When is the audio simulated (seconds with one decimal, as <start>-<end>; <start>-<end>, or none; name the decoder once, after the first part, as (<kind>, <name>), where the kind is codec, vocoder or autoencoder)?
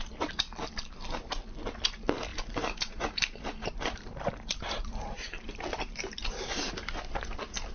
2.3-6.7 (vocoder, BigVGAN v2)